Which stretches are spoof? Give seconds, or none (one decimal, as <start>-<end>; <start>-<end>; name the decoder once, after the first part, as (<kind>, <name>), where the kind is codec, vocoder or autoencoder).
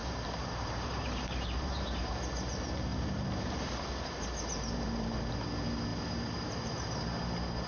0.0-2.2 (vocoder, BigVGAN v2); 2.9-5.3; 5.9-7.0